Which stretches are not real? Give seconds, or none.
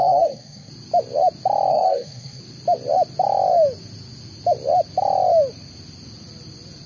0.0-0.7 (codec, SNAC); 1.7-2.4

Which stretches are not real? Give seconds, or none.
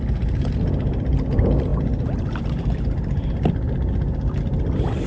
none